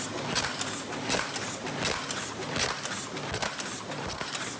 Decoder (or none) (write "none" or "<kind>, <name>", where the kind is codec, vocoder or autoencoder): none